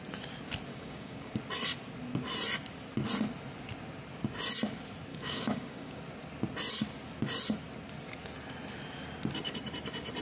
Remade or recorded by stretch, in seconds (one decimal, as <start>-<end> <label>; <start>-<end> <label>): 0.0-0.7 recorded; 0.7-1.3 remade; 1.3-5.1 recorded; 5.1-6.0 remade; 6.0-10.2 recorded